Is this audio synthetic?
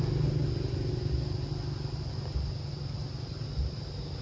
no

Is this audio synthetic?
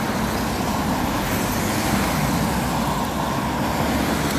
no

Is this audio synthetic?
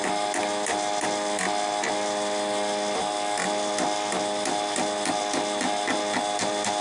no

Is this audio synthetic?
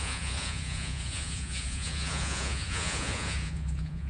yes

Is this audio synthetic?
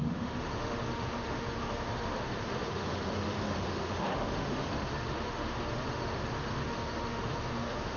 yes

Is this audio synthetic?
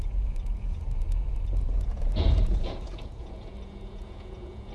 yes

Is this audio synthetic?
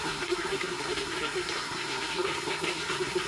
yes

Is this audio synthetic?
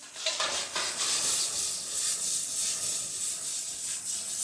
no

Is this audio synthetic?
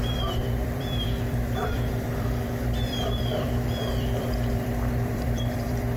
yes